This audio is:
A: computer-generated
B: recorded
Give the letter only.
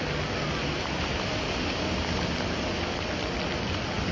B